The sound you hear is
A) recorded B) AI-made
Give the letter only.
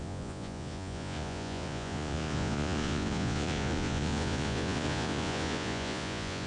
B